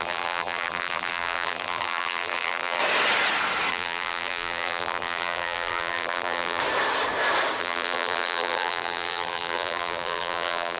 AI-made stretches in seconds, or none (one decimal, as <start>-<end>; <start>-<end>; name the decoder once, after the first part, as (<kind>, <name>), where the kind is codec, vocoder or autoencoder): 0.0-2.8 (vocoder, BigVGAN v2); 3.7-6.6; 7.6-10.8